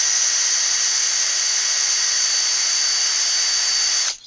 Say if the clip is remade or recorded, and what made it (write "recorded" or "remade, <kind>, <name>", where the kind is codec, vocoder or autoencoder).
recorded